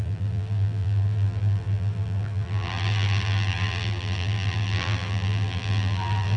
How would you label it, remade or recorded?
remade